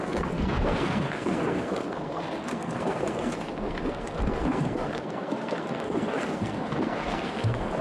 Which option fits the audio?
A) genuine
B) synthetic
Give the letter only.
B